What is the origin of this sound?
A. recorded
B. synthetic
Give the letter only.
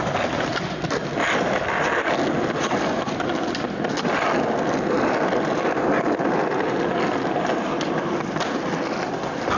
A